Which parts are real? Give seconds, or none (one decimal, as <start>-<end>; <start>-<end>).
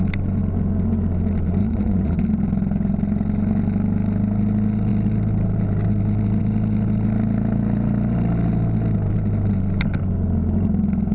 0.0-1.6; 2.2-11.1